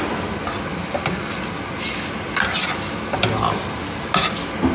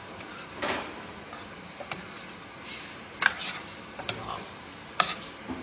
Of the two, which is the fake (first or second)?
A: second